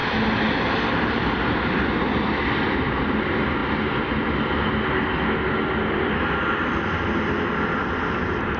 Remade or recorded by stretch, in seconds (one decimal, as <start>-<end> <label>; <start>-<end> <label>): 0.0-1.1 recorded; 1.1-3.6 remade; 3.6-5.9 recorded; 5.9-8.6 remade